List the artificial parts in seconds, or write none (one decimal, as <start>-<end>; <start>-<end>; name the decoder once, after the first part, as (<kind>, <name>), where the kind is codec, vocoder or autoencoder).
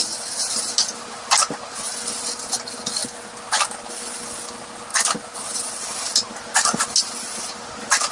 none